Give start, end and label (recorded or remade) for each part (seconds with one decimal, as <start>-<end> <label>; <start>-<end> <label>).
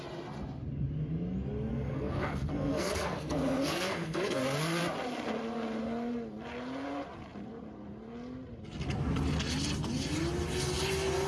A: 0.0-1.7 recorded; 1.7-4.4 remade; 4.4-11.3 recorded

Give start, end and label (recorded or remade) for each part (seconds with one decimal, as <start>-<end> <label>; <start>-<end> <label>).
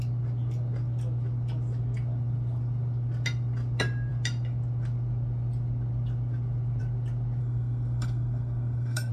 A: 0.0-7.4 recorded; 7.4-9.1 remade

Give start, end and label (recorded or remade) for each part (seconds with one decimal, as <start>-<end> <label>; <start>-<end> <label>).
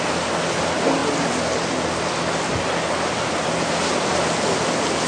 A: 0.0-5.1 recorded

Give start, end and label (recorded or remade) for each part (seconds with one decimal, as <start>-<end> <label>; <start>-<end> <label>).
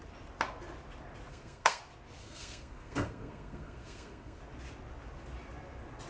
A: 0.0-1.3 recorded; 1.3-1.8 remade; 1.8-2.2 recorded; 2.2-4.4 remade; 4.4-6.1 recorded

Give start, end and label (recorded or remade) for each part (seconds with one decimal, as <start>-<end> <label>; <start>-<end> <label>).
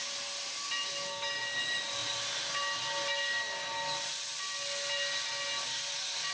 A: 0.0-6.3 recorded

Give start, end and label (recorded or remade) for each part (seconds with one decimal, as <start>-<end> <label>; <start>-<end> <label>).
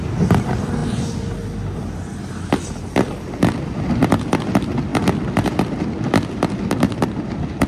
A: 0.0-7.7 recorded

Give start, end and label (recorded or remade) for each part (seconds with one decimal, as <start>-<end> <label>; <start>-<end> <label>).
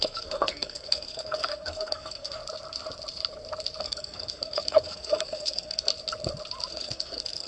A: 0.0-2.4 remade; 2.4-3.8 recorded; 3.8-5.9 remade; 5.9-6.7 recorded; 6.7-7.5 remade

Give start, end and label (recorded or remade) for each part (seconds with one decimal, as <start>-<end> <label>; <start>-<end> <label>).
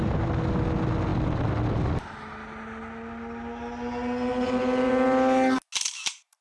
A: 0.0-6.4 recorded